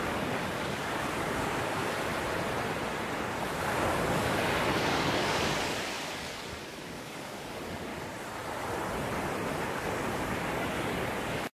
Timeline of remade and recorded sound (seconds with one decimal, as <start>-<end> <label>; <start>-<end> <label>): 0.0-2.1 remade; 2.1-3.6 recorded; 3.6-7.9 remade; 7.9-9.6 recorded; 9.6-11.6 remade